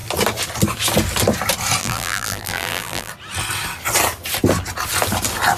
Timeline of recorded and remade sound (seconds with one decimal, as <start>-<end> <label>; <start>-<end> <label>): 0.0-1.8 recorded; 1.8-3.1 remade; 3.1-5.6 recorded